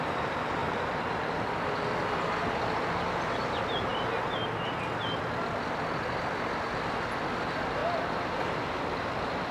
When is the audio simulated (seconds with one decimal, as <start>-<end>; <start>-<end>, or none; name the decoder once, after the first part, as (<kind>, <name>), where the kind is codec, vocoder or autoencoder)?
none